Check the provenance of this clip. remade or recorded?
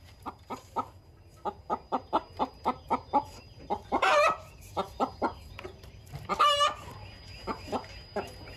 remade